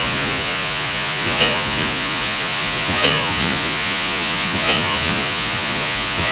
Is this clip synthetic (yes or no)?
yes